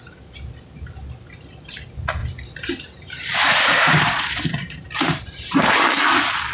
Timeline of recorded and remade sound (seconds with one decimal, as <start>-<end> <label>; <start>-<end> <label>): 0.0-2.2 recorded; 2.2-6.0 remade; 6.0-6.5 recorded